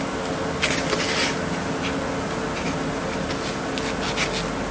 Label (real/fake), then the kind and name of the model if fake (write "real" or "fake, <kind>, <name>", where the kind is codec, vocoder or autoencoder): real